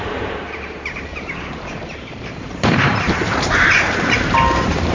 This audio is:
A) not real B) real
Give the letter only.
A